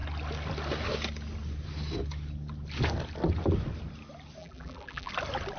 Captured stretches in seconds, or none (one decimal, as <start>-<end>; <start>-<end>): 0.0-4.4; 5.1-5.6